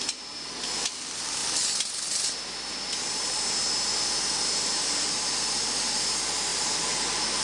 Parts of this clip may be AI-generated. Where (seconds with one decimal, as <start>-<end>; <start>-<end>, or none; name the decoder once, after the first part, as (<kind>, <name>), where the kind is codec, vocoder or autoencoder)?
none